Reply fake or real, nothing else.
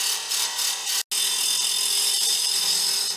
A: real